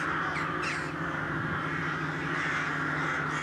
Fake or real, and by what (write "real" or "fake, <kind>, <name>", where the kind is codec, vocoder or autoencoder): real